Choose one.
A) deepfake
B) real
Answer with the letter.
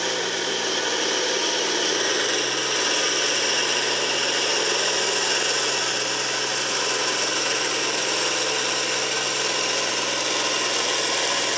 B